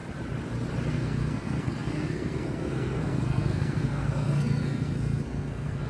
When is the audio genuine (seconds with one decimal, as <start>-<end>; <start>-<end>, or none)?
0.0-0.9